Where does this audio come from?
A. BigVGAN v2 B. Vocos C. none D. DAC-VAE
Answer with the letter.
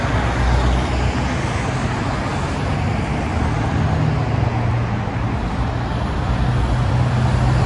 C